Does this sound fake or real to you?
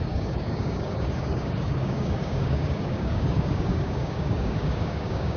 fake